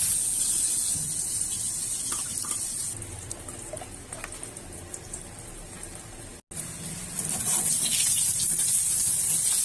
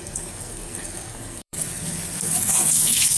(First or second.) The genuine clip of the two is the first